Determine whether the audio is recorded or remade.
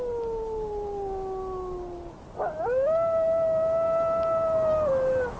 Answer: recorded